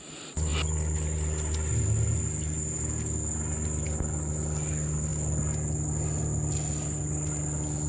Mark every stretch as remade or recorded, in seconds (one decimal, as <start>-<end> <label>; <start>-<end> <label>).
0.0-7.9 recorded